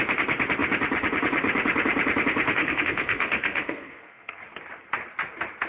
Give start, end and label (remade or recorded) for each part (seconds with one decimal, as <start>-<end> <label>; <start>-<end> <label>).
0.0-2.6 recorded; 2.6-4.4 remade; 4.4-5.7 recorded